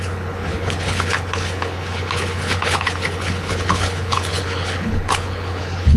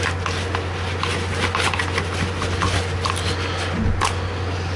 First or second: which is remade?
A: first